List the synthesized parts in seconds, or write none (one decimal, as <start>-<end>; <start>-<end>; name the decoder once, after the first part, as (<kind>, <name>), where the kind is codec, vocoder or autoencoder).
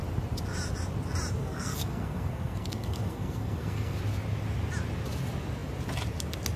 1.4-4.0 (codec, SNAC)